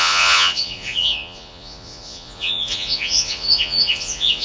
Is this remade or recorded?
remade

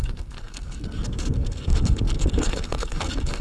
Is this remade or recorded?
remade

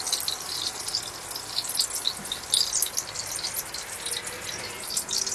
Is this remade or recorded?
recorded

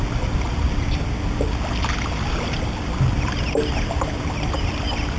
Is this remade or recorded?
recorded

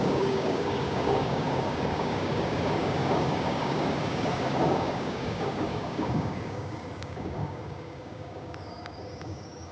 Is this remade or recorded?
remade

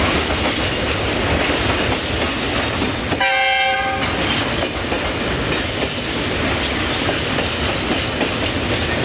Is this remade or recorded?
recorded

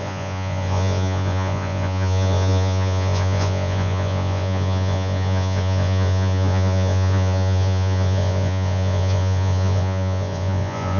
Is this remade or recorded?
remade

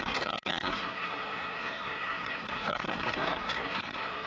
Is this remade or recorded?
remade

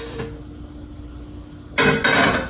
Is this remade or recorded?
recorded